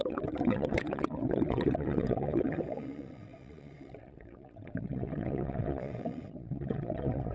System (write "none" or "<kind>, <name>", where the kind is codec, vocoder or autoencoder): vocoder, WaveNeXt